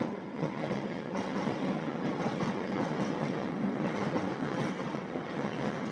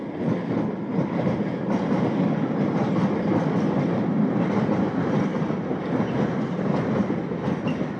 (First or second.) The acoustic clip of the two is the second